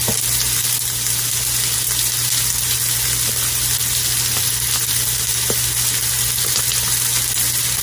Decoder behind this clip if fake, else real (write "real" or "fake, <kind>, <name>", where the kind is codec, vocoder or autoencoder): real